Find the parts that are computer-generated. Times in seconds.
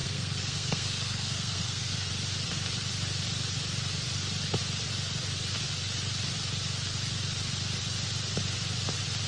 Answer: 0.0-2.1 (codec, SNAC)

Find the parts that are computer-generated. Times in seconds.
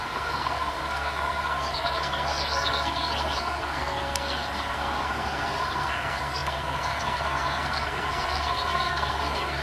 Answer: 0.0-9.6 (codec, SNAC)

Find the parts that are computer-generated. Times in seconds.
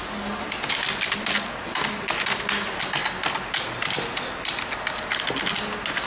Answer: none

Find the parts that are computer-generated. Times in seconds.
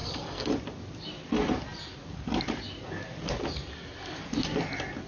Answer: 0.0-0.5 (codec, SNAC)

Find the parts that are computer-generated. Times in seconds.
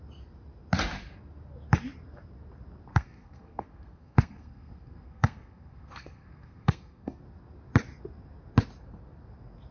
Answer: 2.9-7.2 (codec, SNAC)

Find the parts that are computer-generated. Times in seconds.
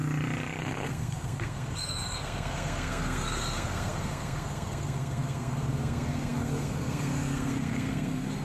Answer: 0.6-8.4 (codec, SNAC)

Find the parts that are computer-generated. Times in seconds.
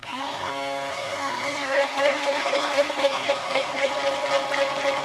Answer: 0.0-0.5 (codec, SNAC); 0.9-3.9